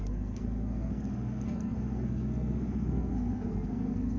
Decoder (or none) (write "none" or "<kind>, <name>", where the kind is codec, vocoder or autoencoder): codec, SNAC